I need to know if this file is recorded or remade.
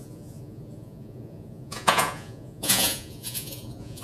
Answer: remade